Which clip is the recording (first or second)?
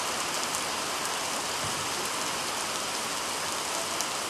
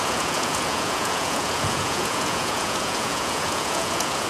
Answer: first